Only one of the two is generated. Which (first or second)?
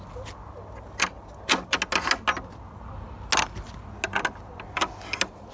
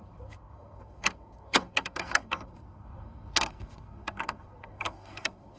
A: second